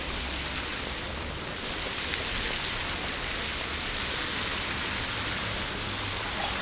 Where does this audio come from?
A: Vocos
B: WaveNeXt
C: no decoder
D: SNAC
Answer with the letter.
C